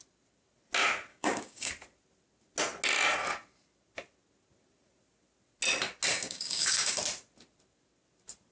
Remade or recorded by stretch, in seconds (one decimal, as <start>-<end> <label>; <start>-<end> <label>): 0.0-1.1 recorded; 1.1-1.7 remade; 1.7-6.1 recorded; 6.1-7.0 remade; 7.0-8.5 recorded